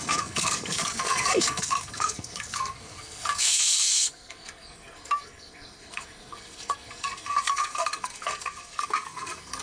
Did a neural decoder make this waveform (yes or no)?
yes